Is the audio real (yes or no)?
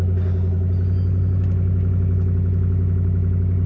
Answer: yes